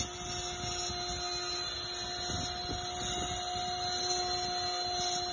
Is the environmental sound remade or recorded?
recorded